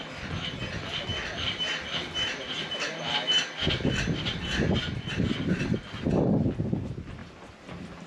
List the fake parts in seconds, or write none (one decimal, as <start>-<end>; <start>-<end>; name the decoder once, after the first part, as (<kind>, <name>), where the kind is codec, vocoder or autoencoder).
none